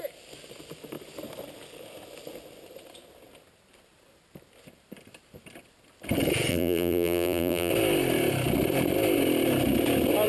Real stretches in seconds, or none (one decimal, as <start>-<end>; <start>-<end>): 0.0-6.5; 7.7-10.3

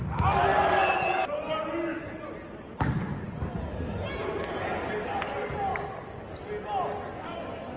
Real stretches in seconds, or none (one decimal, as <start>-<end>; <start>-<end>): 0.0-5.7; 6.3-7.8